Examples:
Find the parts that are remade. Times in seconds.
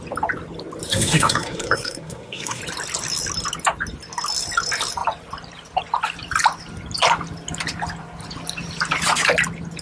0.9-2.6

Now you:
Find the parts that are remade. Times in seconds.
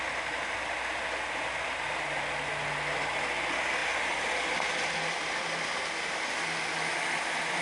none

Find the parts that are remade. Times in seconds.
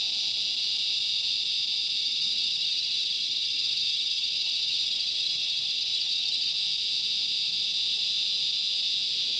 2.0-6.5